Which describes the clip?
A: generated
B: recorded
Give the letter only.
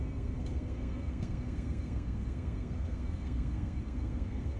A